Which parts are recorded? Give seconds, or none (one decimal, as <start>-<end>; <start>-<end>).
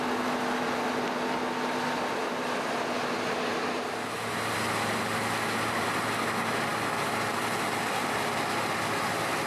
0.0-9.5